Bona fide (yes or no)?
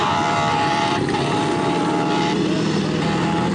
no